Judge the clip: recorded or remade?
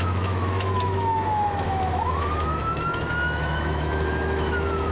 remade